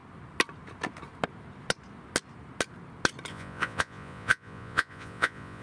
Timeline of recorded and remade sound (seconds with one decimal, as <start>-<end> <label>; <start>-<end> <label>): 0.0-3.3 recorded; 3.3-5.6 remade